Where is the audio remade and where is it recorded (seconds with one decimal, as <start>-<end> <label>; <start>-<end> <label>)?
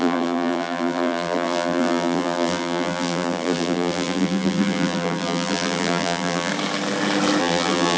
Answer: 0.0-6.5 remade; 6.5-7.4 recorded; 7.4-8.0 remade